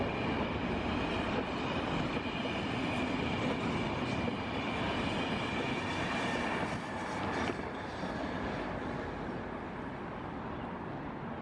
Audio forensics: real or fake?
real